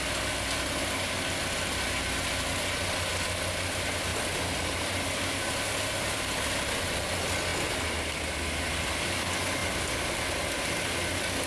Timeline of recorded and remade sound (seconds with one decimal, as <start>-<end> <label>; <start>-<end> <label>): 0.0-4.1 recorded; 4.1-6.7 remade; 6.7-11.5 recorded